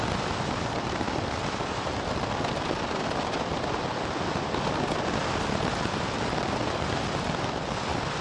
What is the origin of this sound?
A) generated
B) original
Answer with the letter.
B